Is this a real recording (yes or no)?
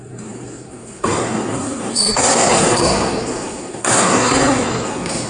no